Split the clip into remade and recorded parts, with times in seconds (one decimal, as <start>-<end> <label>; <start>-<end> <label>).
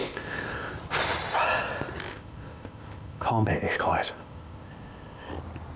0.0-0.7 remade; 0.7-2.1 recorded; 2.1-5.3 remade; 5.3-5.8 recorded